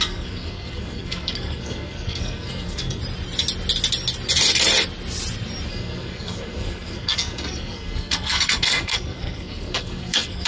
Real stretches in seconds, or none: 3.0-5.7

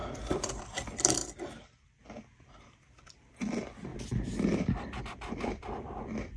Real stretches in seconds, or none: none

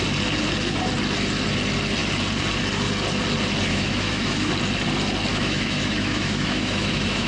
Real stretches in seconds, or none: 0.0-3.7; 4.5-5.3

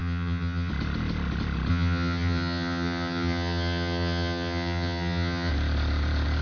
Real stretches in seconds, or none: 0.7-1.7; 5.5-6.4

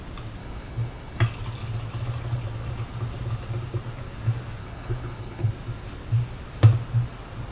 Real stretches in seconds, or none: 0.0-0.4; 1.2-4.6; 5.5-7.5

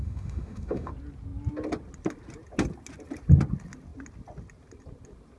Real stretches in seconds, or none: 0.9-5.4